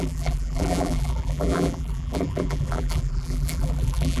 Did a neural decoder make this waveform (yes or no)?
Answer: yes